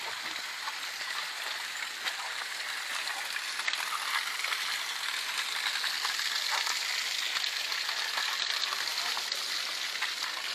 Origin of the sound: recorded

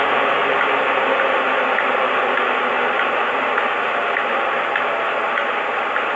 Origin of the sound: recorded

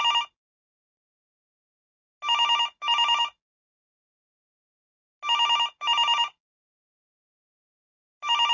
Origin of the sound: recorded